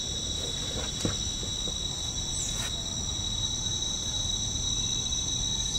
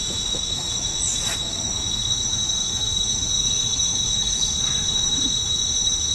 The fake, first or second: second